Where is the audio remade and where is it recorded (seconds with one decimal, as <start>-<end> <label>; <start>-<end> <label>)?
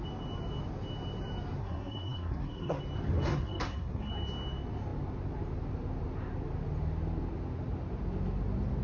0.0-1.6 recorded; 1.6-2.8 remade; 2.8-3.3 recorded; 3.3-4.1 remade; 4.1-8.8 recorded